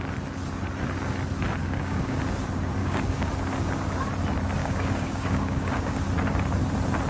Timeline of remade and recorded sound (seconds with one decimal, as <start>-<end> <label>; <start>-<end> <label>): 0.0-1.6 recorded; 1.6-2.2 remade; 2.2-2.8 recorded; 2.8-3.3 remade; 3.3-4.6 recorded; 4.6-6.0 remade; 6.0-7.1 recorded